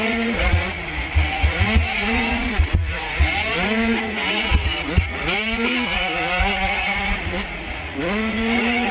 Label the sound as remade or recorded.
remade